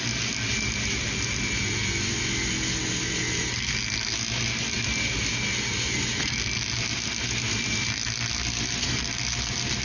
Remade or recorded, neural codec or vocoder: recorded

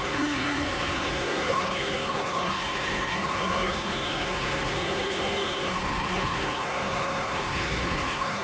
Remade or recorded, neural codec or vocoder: remade, codec, SNAC